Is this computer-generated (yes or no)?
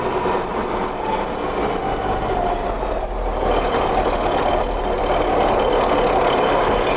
no